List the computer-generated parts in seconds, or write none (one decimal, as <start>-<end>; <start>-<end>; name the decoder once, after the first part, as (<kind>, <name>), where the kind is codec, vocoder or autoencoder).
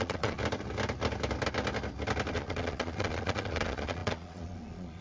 0.0-0.4 (vocoder, Vocos); 2.3-5.0